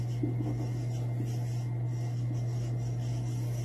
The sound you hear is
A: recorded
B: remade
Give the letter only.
A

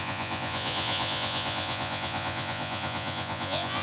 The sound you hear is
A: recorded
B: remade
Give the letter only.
B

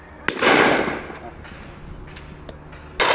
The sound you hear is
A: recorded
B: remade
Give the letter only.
A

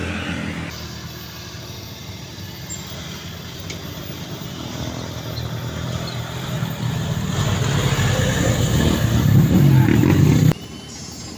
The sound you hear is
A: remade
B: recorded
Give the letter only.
B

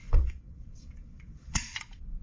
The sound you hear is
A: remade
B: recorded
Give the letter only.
A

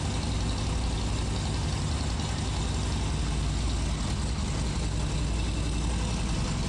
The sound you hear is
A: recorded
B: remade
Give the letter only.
A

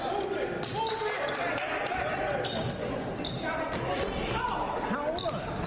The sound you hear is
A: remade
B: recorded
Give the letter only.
B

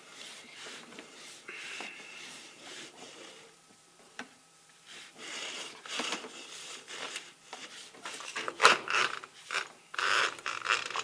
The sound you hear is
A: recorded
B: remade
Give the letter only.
B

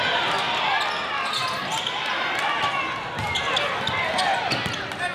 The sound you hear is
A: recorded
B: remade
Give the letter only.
A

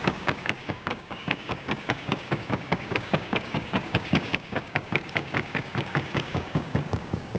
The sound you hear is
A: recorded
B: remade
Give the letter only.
B